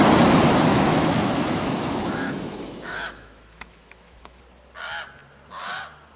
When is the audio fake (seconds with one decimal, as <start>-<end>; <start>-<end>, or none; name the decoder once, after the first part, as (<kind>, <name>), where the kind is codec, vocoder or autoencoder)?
0.7-4.4 (autoencoder, DAC-VAE)